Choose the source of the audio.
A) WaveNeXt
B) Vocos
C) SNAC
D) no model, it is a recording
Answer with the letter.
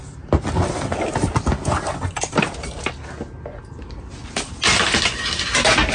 D